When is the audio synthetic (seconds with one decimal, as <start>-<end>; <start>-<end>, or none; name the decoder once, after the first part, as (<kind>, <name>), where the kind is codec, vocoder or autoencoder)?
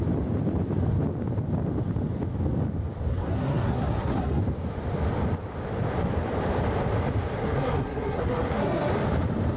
3.1-4.4 (codec, SNAC); 7.4-8.9